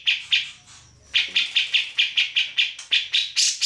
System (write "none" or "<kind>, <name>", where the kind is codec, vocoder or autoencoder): none